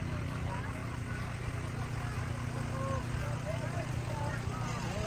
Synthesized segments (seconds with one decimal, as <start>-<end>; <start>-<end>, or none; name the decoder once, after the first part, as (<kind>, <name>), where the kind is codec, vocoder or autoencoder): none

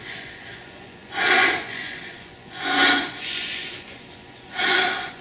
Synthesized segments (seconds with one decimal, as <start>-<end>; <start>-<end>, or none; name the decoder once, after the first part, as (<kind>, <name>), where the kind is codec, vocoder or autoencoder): 0.0-5.2 (vocoder, Vocos)

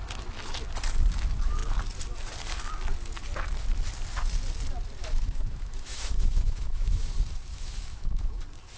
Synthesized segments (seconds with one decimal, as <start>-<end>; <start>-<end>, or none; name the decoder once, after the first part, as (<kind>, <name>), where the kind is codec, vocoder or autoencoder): 5.0-7.1 (autoencoder, DAC-VAE); 7.5-8.4